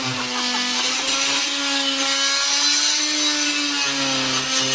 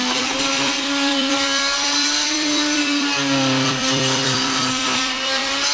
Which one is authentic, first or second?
first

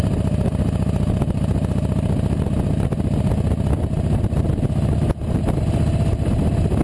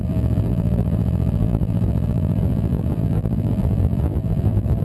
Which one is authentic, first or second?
first